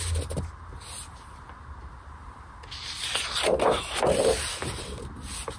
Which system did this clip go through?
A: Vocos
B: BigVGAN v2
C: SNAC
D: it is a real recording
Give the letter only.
D